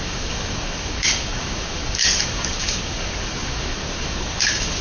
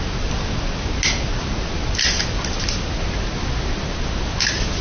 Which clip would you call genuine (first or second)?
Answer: second